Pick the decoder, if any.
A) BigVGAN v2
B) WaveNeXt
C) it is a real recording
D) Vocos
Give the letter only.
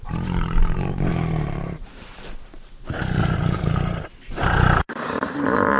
A